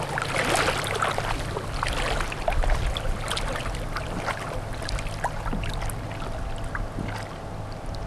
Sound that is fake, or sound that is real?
real